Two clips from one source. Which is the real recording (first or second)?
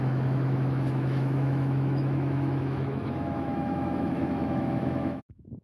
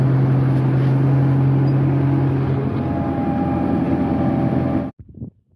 second